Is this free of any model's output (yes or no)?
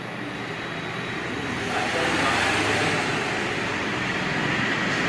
yes